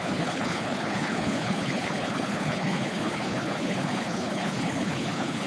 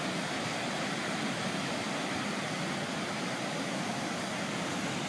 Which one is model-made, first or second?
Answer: first